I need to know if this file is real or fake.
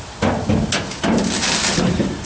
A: real